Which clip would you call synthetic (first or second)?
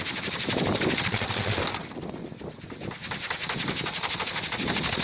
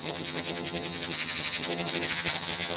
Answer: second